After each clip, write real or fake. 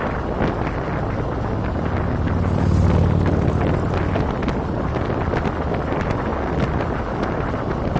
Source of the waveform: real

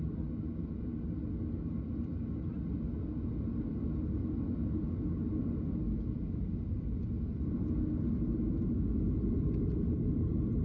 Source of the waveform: real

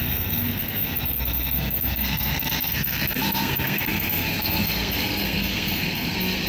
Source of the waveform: fake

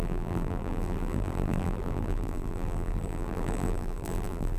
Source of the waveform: fake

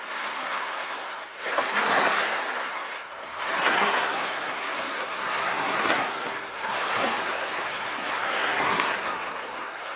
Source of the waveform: fake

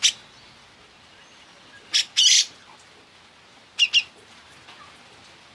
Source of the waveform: real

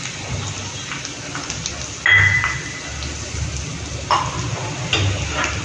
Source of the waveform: real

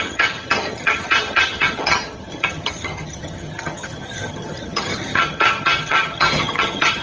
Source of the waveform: fake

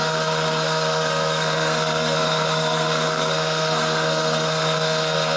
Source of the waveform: fake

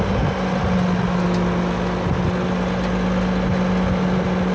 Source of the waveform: real